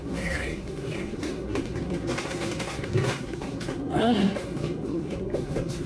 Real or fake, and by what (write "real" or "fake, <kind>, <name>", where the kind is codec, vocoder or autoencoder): fake, codec, SNAC